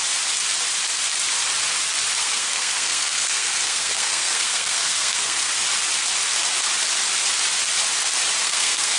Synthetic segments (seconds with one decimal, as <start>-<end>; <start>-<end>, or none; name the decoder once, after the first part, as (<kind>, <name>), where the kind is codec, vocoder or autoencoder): 2.2-5.5 (codec, SNAC); 8.4-9.0